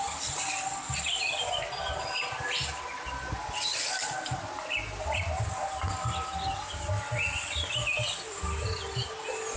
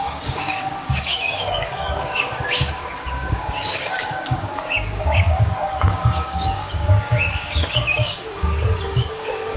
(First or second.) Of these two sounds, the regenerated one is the second